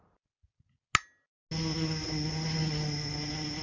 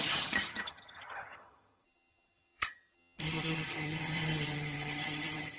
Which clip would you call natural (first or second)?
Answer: first